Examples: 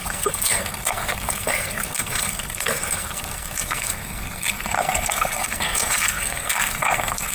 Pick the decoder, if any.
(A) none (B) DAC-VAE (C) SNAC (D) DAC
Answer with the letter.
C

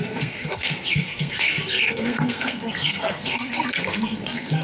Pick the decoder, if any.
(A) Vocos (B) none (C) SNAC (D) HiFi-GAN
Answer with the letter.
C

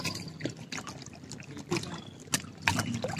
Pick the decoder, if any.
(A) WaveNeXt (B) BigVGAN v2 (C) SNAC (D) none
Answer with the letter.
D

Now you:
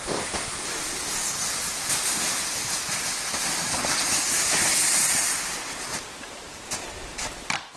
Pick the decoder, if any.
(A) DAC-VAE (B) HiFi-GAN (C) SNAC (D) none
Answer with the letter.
D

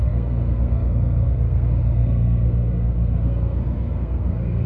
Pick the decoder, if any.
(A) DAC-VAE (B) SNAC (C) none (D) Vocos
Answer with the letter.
B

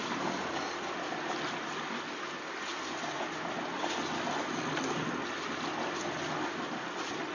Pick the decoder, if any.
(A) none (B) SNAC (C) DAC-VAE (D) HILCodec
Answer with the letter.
A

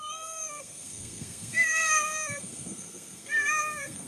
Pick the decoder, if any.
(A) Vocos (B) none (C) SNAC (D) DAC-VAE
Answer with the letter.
C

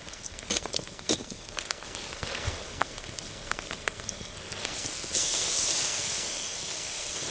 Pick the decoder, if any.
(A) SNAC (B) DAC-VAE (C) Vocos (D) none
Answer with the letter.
A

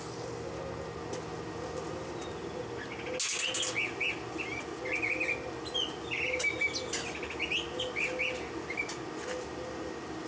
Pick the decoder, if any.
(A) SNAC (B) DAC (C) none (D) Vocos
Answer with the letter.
C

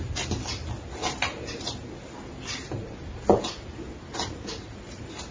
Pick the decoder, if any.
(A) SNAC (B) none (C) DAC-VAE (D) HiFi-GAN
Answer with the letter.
B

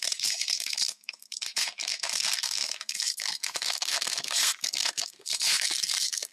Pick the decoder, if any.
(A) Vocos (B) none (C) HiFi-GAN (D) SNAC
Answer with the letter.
D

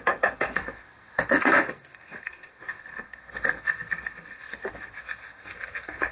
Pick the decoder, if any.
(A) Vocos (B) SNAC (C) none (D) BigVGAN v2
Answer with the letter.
B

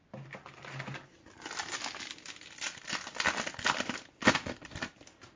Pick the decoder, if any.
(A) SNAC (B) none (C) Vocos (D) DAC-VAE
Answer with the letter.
B